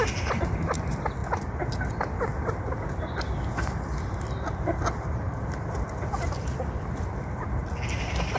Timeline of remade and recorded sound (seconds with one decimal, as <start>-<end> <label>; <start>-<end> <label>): 0.0-8.4 recorded